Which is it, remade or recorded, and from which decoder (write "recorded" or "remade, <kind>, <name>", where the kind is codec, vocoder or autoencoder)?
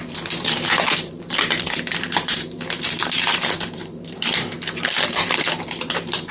remade, vocoder, BigVGAN v2